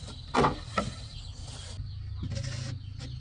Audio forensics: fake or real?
real